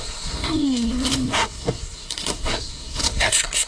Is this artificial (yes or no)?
yes